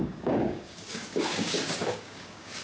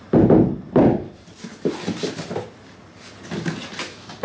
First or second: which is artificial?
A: first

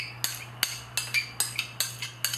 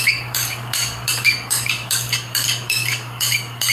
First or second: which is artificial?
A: second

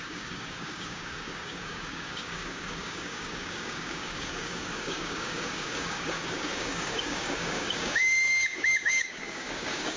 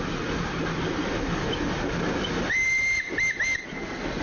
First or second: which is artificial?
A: first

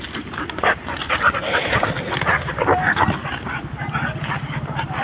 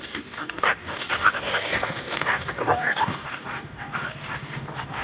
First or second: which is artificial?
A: second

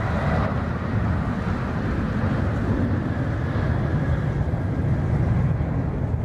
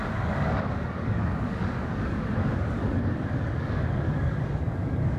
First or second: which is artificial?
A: second